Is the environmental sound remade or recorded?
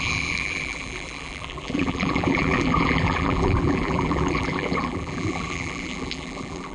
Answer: remade